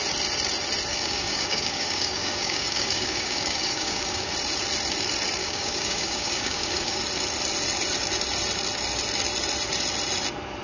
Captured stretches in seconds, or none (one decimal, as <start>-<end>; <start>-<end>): 0.0-0.9; 4.3-5.4; 7.0-10.6